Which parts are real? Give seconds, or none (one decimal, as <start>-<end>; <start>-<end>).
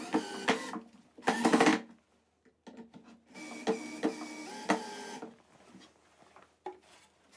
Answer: 0.0-7.4